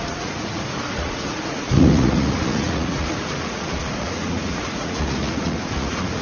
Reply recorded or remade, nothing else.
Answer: remade